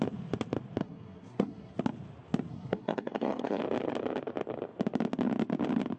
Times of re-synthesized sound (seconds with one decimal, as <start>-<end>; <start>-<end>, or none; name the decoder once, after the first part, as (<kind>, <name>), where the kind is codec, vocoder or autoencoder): 0.8-1.8 (codec, SNAC); 2.5-3.6